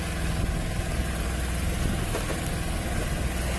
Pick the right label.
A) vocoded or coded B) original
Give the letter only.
B